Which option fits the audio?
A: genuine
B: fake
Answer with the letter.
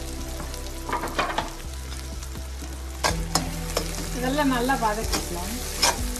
A